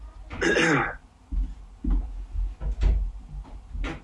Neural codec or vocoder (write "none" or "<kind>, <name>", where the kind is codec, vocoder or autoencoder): none